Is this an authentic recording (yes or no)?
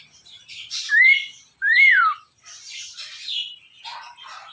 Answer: no